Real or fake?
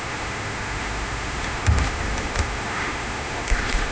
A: fake